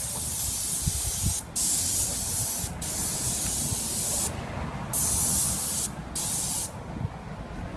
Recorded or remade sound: recorded